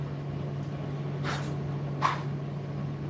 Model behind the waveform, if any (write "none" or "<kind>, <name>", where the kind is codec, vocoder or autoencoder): none